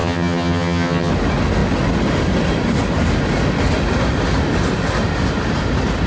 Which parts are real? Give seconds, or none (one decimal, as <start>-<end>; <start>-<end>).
1.1-6.1